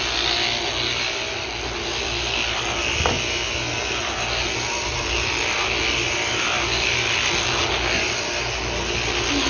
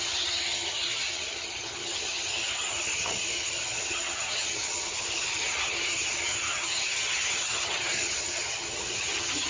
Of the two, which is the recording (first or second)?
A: first